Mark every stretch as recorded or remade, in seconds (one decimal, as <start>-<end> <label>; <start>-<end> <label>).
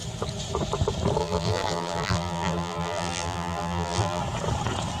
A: 0.0-1.2 recorded; 1.2-4.2 remade; 4.2-5.0 recorded